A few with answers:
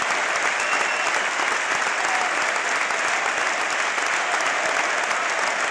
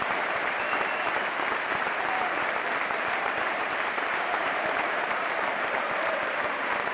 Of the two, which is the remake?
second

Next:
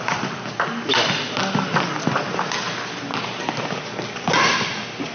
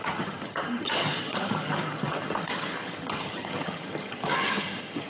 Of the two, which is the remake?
second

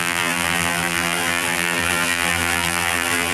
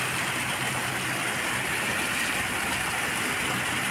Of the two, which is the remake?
first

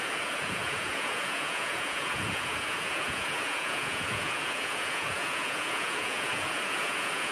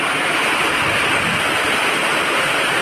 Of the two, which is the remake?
first